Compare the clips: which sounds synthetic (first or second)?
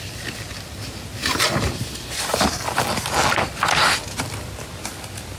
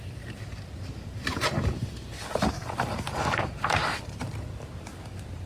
second